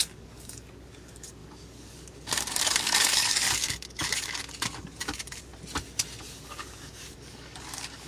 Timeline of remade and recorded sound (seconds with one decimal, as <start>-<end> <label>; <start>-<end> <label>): 0.0-5.5 remade; 5.5-6.2 recorded; 6.2-8.1 remade